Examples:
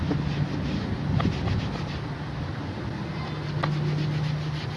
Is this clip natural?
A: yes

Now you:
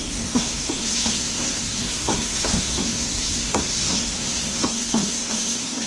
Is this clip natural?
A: no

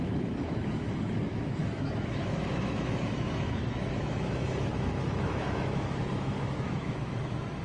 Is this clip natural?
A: no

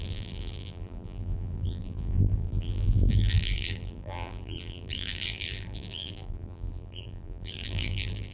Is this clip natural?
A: no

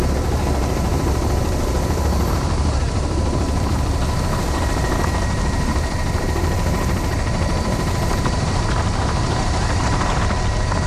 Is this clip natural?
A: no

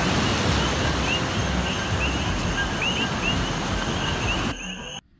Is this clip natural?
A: yes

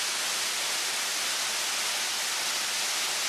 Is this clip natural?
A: yes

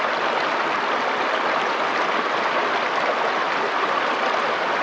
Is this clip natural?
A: yes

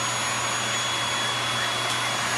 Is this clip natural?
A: yes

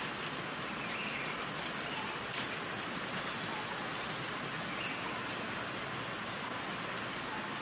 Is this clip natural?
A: yes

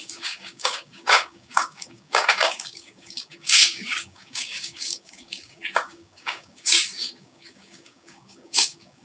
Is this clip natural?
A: no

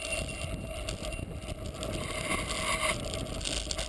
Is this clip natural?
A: yes